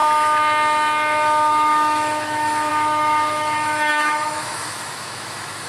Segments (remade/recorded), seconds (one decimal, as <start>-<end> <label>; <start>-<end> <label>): 0.0-1.5 recorded; 1.5-5.7 remade